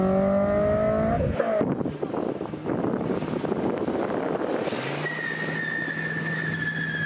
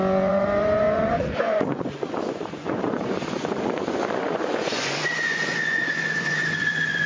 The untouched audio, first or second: first